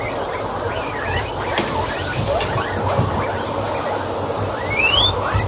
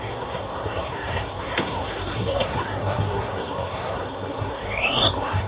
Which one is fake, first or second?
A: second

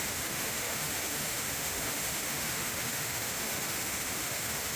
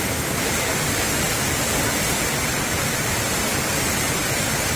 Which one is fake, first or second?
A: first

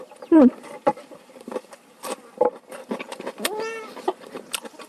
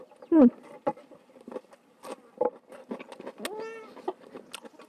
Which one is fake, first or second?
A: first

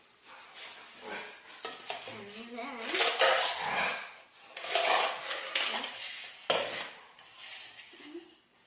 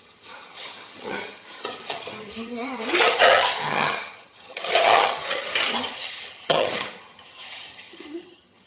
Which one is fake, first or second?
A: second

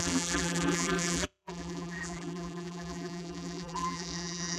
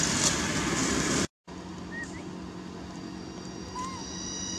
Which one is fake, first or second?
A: first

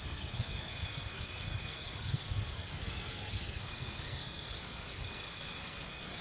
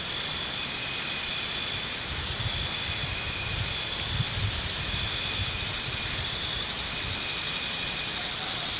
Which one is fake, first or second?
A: first